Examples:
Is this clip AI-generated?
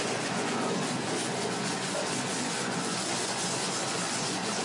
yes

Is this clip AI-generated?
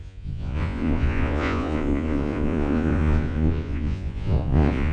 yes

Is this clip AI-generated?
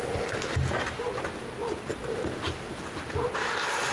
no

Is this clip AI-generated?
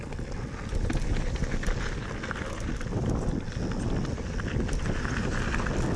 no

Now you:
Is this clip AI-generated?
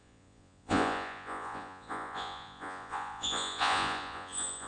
yes